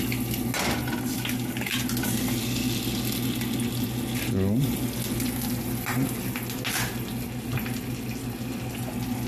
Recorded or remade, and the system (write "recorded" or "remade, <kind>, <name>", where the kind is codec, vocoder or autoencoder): recorded